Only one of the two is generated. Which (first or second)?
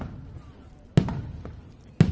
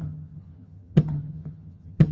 second